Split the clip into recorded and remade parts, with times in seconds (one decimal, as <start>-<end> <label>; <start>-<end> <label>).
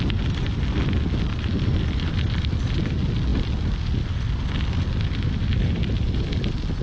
0.0-1.3 recorded; 1.3-2.6 remade; 2.6-3.3 recorded; 3.3-6.3 remade; 6.3-6.8 recorded